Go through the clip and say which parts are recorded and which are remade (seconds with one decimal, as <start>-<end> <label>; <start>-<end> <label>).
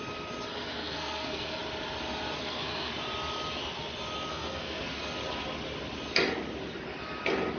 0.0-0.5 recorded; 0.5-1.6 remade; 1.6-2.4 recorded; 2.4-2.9 remade; 2.9-4.3 recorded; 4.3-4.8 remade; 4.8-7.6 recorded